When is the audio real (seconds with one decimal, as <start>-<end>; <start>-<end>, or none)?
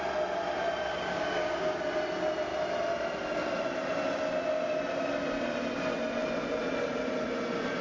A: 0.0-0.9; 1.8-7.8